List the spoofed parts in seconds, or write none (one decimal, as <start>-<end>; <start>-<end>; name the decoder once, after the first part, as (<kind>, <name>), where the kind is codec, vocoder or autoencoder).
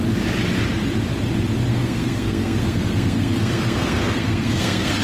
1.7-5.0 (codec, SNAC)